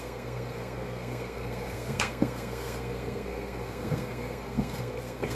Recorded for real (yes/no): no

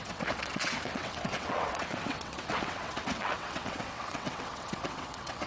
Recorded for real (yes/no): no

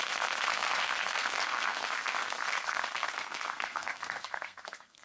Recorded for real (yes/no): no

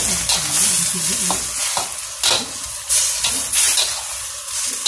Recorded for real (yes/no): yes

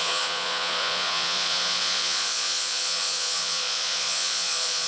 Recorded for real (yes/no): no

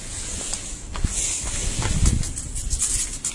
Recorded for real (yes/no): yes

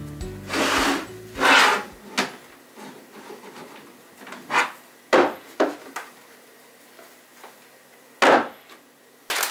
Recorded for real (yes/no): yes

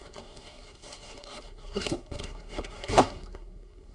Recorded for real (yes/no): no